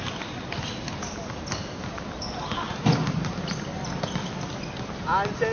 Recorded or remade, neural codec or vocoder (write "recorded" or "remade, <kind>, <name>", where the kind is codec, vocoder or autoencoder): recorded